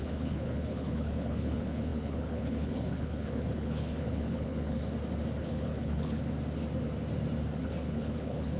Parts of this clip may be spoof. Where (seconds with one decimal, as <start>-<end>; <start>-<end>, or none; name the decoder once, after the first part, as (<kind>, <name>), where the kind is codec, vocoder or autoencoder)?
0.0-4.8 (codec, HILCodec); 5.4-6.2; 7.6-8.6